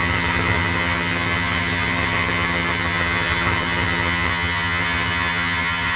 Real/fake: fake